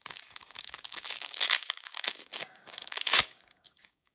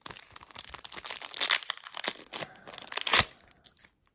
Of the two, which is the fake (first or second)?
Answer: first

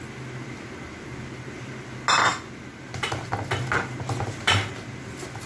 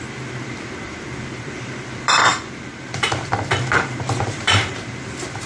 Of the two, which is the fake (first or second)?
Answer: second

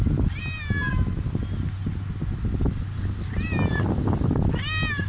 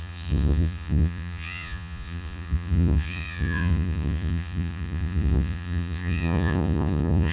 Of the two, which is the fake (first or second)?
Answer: second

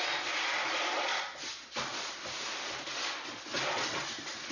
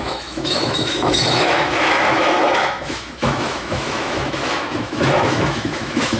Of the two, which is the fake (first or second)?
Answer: second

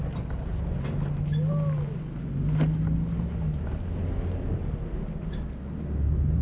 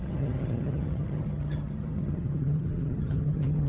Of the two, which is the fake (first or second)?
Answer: second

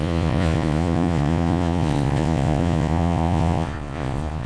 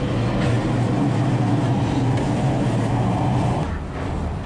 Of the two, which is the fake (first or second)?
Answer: first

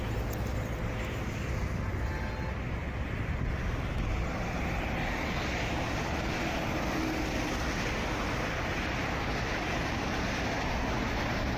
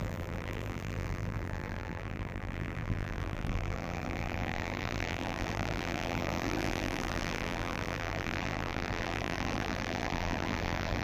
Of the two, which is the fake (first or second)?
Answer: second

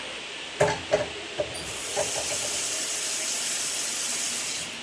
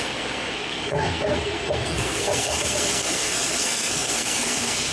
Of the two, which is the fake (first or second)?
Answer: second